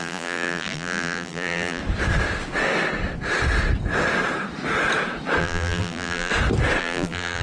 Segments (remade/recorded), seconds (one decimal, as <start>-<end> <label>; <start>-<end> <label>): 0.0-1.8 remade; 1.8-5.4 recorded; 5.4-6.3 remade; 6.3-6.8 recorded; 6.8-7.4 remade